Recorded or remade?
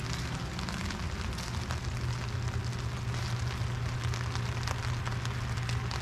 recorded